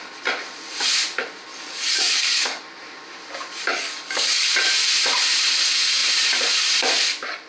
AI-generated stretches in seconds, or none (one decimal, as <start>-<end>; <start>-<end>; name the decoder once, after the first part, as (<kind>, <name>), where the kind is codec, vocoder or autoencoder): 1.5-2.6 (codec, DAC); 3.7-4.5